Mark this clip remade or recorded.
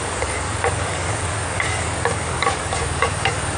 remade